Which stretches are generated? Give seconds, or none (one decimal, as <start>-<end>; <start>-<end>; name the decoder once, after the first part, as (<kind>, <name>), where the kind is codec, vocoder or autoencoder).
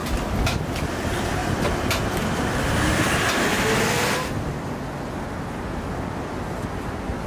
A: none